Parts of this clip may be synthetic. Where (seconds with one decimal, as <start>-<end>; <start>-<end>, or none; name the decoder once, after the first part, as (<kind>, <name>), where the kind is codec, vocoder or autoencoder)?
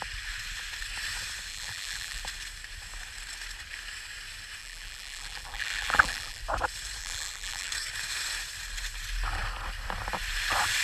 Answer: 1.5-2.2 (vocoder, BigVGAN v2); 4.6-6.4; 7.0-7.7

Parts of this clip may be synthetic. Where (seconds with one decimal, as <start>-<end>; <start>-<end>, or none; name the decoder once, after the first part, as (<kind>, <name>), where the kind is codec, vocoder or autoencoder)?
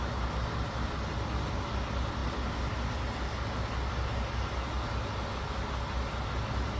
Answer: none